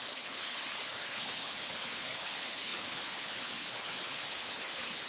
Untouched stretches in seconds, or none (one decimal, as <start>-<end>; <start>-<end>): none